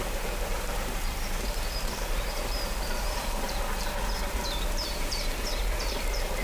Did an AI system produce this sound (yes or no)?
yes